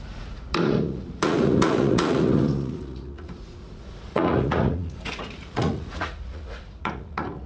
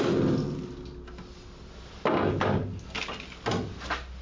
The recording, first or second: second